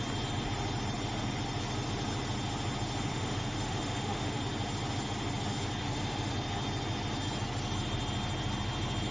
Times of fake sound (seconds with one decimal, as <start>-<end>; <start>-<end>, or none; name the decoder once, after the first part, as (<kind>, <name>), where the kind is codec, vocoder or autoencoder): 3.1-4.4 (autoencoder, DAC-VAE); 5.8-6.3